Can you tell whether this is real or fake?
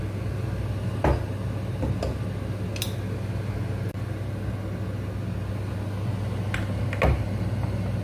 real